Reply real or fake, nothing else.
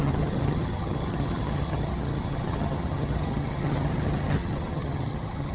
fake